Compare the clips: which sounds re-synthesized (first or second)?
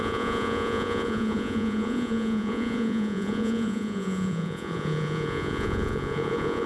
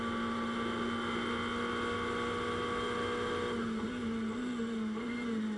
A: first